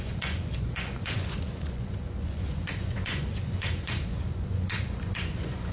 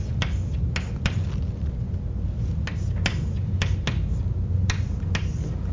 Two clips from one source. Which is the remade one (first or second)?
first